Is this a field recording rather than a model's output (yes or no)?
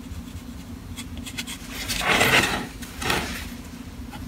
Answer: yes